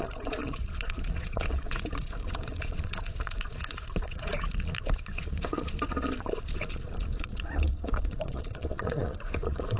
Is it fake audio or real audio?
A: fake